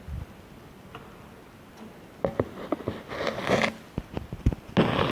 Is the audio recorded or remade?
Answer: recorded